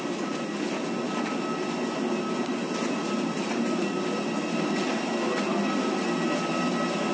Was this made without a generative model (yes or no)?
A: yes